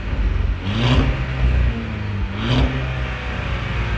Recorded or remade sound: recorded